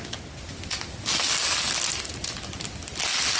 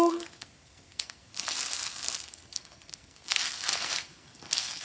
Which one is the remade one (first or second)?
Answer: second